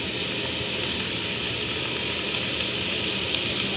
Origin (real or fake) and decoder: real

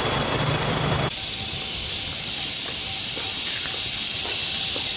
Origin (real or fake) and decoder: fake, vocoder, BigVGAN v2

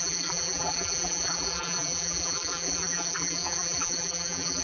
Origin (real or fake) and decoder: fake, vocoder, BigVGAN v2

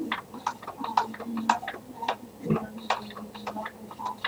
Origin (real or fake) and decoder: real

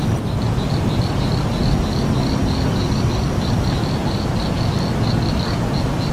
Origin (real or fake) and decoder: real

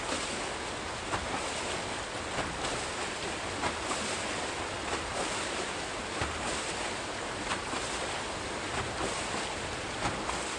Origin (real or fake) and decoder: real